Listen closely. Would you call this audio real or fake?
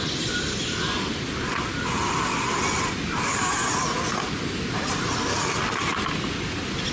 real